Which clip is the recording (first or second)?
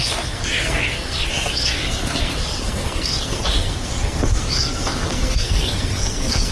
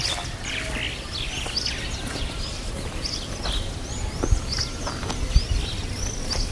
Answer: second